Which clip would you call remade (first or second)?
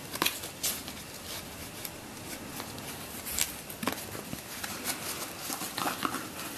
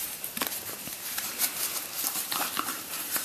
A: second